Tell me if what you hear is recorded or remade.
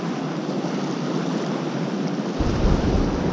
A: recorded